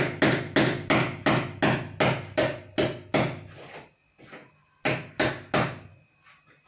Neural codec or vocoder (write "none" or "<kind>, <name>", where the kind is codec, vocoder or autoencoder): none